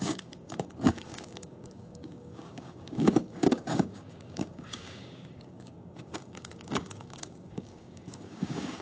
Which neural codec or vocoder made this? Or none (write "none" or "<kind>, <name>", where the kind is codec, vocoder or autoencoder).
codec, DAC